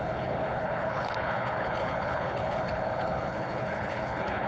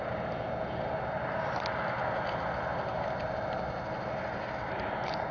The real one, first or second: second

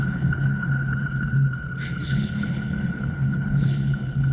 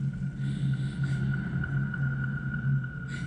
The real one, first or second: second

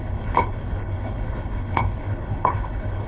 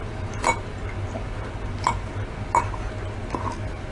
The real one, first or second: second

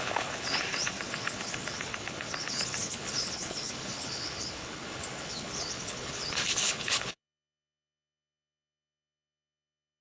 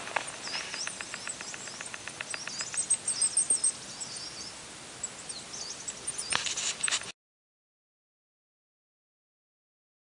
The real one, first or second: second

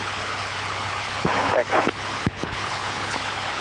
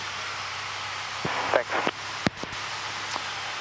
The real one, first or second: second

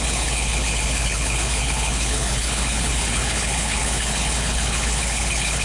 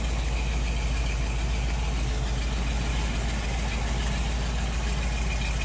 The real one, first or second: second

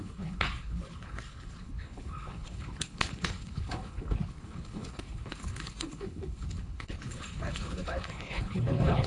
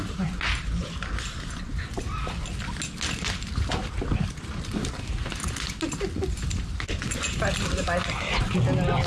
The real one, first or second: second